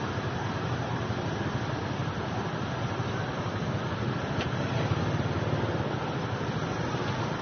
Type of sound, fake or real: real